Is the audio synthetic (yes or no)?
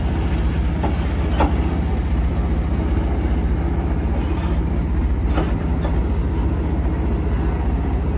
no